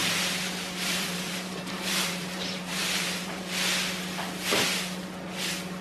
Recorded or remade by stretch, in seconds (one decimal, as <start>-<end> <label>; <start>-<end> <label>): 0.0-3.4 remade; 3.4-5.8 recorded